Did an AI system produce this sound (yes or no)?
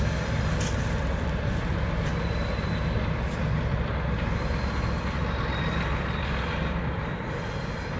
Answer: yes